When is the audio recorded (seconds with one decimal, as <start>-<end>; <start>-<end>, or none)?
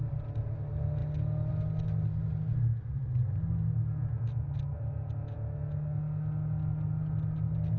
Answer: 0.0-7.8